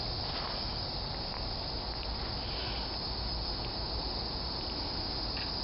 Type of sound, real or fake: real